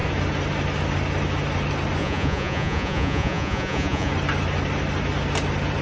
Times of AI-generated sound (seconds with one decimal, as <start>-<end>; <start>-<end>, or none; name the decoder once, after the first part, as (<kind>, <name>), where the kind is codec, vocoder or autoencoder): 2.0-4.1 (vocoder, Vocos)

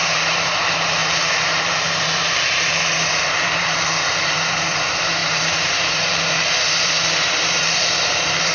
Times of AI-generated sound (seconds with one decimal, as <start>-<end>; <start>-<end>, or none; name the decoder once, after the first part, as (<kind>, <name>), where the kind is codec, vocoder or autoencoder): 0.0-8.5 (vocoder, BigVGAN v2)

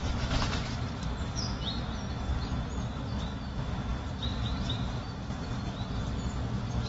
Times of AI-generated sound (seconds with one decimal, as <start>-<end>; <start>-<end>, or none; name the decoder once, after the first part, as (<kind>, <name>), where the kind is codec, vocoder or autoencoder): none

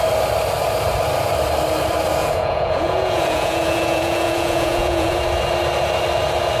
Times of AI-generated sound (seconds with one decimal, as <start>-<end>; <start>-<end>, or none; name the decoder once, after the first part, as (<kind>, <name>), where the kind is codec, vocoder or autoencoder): 2.2-5.2 (vocoder, Vocos)

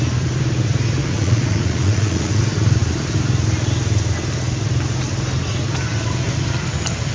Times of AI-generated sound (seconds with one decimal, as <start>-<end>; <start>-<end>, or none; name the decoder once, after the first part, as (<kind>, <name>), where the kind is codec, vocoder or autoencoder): 1.0-2.4 (vocoder, Vocos)

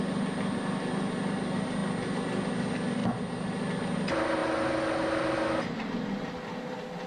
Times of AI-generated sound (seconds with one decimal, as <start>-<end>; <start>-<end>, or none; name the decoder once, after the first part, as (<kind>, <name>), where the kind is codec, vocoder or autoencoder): none

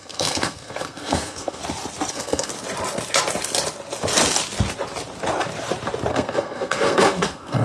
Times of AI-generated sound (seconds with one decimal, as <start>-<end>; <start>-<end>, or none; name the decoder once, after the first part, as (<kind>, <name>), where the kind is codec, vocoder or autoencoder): 0.0-1.6 (codec, SNAC); 2.1-2.5; 6.1-7.6